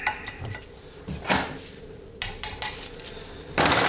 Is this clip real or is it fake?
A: real